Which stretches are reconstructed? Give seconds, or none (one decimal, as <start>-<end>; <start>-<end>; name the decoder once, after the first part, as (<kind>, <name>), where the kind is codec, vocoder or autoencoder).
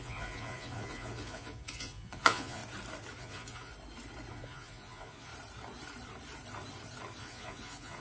0.0-2.6 (vocoder, Vocos); 3.2-3.7; 4.3-5.3; 7.2-8.0